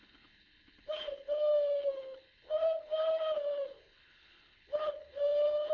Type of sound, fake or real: fake